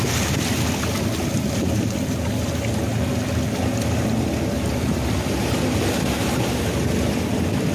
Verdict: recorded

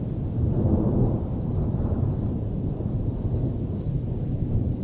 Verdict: recorded